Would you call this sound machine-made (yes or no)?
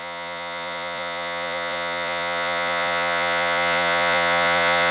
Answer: yes